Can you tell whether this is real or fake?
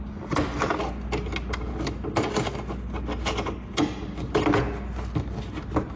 real